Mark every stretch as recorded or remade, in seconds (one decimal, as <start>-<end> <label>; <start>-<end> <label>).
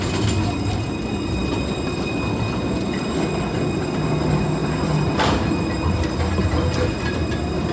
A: 0.0-7.7 recorded